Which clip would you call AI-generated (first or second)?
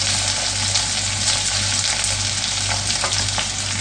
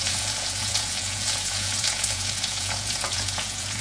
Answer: second